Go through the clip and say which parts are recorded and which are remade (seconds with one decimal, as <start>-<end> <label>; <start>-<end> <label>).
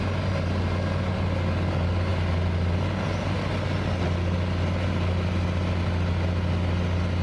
0.0-7.2 recorded